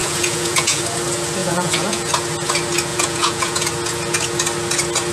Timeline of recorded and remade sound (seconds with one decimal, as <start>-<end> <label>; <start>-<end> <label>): 0.0-0.8 remade; 0.8-1.4 recorded; 1.4-2.1 remade; 2.1-2.9 recorded; 2.9-3.7 remade; 3.7-5.1 recorded